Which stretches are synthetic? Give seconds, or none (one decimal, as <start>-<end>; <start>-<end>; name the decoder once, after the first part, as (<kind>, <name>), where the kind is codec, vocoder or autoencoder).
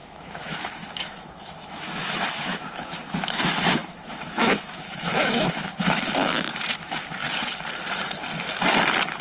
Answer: 0.0-7.2 (autoencoder, DAC-VAE)